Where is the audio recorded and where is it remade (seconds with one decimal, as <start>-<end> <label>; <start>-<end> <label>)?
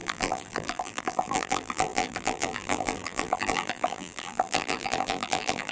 0.0-5.7 remade